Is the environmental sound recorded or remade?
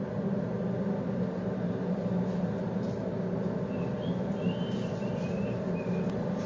recorded